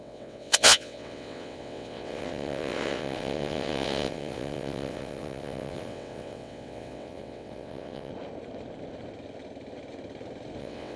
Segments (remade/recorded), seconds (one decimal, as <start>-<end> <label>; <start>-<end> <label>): 0.0-8.1 remade; 8.1-10.6 recorded; 10.6-11.0 remade